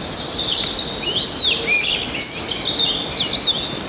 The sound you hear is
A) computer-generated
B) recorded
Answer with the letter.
B